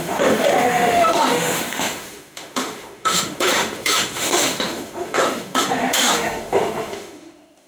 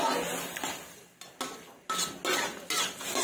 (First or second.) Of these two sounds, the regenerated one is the first